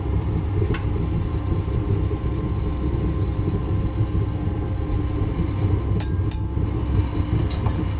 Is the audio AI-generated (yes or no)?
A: no